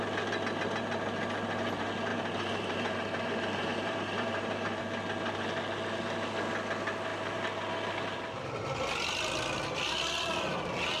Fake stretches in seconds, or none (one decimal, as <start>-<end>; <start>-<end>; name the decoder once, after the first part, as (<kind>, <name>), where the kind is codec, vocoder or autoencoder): 2.1-4.8 (vocoder, BigVGAN v2)